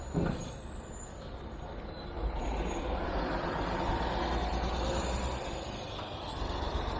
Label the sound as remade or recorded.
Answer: recorded